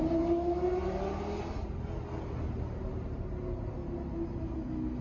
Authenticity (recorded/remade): recorded